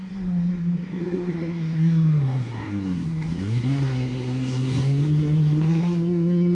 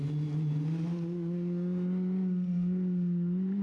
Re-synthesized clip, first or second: first